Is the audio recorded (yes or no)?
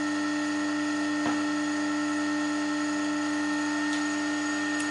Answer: yes